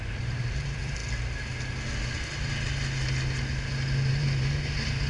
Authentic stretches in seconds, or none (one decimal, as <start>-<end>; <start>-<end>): 1.0-4.1